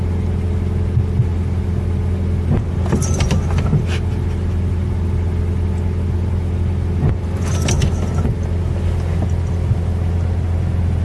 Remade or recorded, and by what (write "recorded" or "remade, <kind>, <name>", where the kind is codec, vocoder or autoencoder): recorded